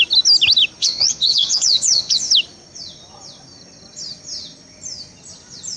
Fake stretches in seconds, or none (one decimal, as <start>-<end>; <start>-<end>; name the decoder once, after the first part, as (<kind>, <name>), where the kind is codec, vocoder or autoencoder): 0.8-2.3 (vocoder, Vocos)